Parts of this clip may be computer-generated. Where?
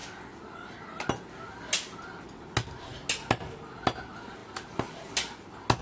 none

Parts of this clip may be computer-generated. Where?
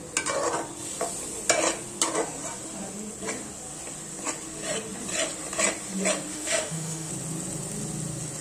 6.3-7.1 (autoencoder, DAC-VAE)